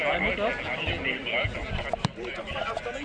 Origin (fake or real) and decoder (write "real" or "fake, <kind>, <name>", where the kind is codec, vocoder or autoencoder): real